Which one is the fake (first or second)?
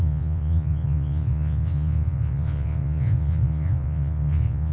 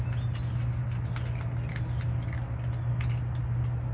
first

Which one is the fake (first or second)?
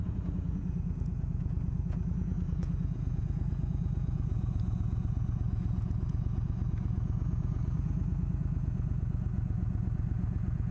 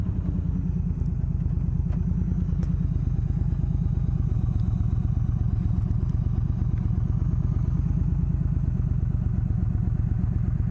first